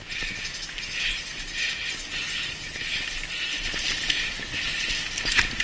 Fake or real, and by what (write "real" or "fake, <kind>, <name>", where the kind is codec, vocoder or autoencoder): real